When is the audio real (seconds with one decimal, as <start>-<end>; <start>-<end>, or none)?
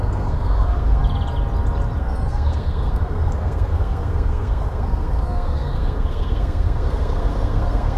1.0-2.0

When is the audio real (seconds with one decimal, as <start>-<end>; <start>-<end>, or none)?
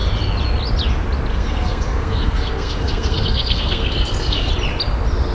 0.0-1.3; 4.5-5.3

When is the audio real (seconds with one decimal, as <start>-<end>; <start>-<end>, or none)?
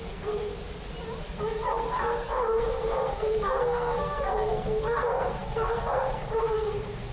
0.5-1.2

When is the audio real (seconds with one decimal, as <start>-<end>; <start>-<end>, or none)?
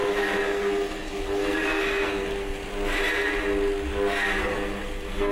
2.6-4.4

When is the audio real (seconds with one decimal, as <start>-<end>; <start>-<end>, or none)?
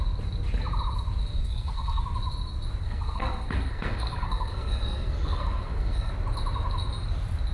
0.0-1.4; 2.0-2.8; 6.1-7.5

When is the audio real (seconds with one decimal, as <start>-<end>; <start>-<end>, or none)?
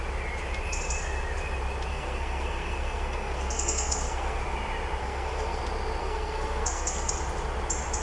0.0-1.9; 4.4-5.0; 5.6-6.0; 7.1-8.0